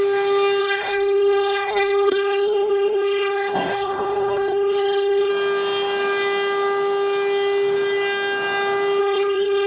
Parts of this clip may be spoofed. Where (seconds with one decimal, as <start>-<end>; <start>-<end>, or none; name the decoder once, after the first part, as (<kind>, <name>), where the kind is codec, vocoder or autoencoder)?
0.6-5.3 (codec, SNAC); 9.0-9.7

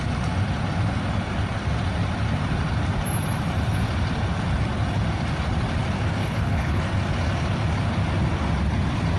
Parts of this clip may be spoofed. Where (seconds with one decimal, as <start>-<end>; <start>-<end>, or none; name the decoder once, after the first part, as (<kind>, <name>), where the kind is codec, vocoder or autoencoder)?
6.2-6.8 (codec, HILCodec)

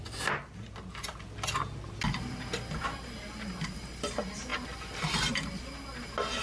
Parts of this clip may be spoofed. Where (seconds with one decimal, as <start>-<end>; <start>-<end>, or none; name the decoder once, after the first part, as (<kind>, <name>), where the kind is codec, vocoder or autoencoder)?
none

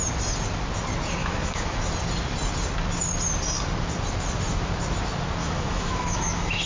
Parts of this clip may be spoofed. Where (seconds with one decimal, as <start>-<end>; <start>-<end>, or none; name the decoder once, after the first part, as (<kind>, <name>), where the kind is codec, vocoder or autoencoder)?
1.2-1.9 (autoencoder, DAC-VAE); 5.4-6.7